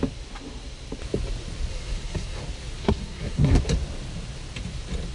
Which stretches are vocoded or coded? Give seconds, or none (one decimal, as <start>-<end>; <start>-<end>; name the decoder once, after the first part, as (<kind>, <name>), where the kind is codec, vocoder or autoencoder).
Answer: 1.7-2.4 (codec, SNAC); 2.8-3.6